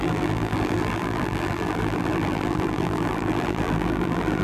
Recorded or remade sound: remade